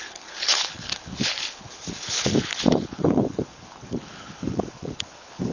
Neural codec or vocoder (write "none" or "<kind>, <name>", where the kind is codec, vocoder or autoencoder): codec, HILCodec